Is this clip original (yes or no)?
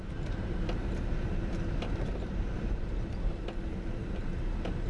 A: no